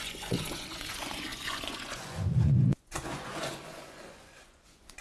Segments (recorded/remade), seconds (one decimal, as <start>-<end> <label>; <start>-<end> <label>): 0.0-5.0 remade